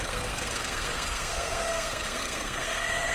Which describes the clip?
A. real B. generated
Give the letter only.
B